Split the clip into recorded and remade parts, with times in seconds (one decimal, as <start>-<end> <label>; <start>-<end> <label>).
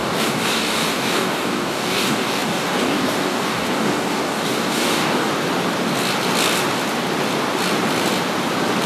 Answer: 0.0-5.3 remade; 5.3-8.9 recorded